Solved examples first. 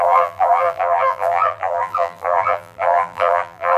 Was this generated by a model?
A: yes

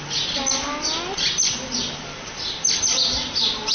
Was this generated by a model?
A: no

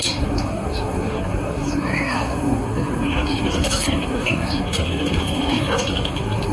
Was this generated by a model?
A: yes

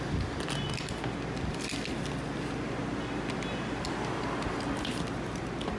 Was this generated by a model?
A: no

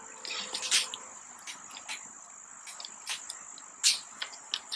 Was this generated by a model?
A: no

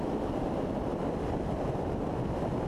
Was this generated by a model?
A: no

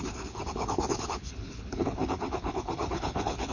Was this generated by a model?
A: yes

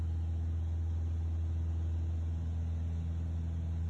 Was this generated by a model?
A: no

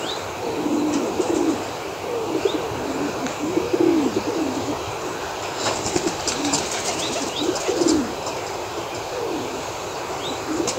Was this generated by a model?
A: yes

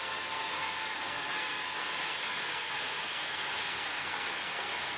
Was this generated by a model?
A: yes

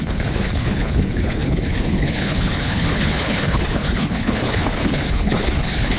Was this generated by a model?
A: yes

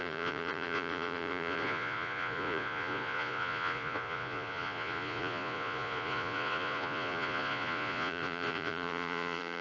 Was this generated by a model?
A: yes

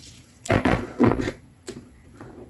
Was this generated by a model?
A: yes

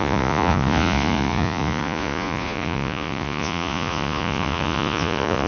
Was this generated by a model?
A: yes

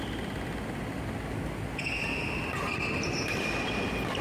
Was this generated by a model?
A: no